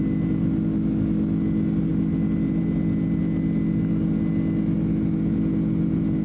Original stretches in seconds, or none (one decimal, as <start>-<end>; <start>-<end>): 0.0-6.2